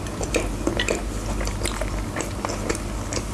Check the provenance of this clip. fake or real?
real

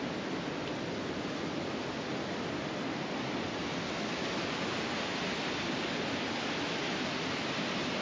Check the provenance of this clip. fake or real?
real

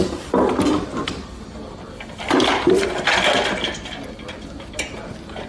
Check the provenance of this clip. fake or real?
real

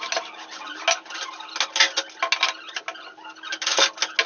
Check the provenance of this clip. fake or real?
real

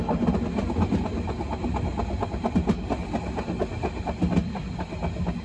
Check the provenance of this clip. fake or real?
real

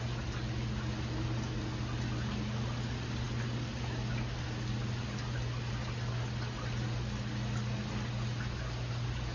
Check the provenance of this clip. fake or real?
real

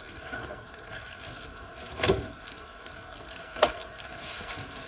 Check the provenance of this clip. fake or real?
fake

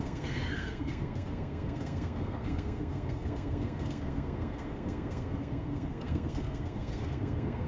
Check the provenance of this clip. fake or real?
fake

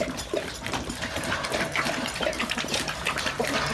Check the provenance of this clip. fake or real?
fake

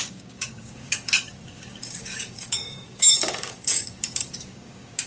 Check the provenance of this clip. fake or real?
fake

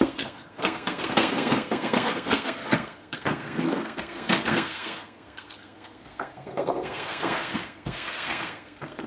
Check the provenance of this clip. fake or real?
fake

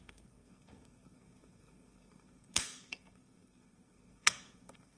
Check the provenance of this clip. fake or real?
fake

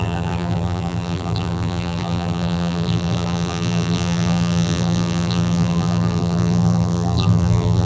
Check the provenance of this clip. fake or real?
fake